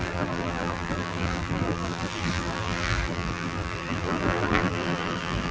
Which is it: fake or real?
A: fake